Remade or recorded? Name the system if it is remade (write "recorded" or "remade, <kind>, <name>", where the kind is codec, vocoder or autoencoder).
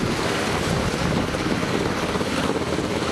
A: remade, codec, DAC